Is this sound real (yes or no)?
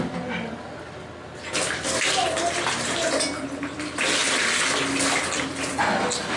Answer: yes